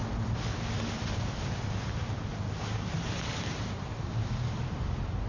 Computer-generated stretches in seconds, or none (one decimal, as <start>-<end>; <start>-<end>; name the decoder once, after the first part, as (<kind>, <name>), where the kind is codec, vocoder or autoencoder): 2.3-4.7 (vocoder, BigVGAN v2)